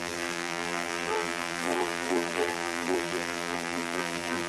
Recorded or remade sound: remade